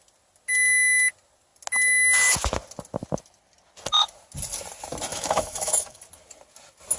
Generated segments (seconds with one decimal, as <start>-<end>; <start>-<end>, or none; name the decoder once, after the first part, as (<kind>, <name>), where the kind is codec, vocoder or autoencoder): 5.1-6.0 (autoencoder, DAC-VAE)